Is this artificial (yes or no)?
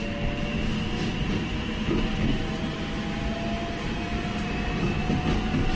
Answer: no